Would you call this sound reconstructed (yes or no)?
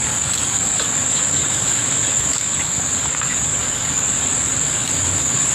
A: yes